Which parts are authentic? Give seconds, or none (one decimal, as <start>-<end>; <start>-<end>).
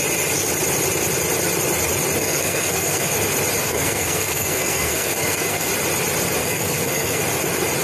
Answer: 0.0-2.2; 3.1-3.6; 5.7-6.4; 7.2-7.8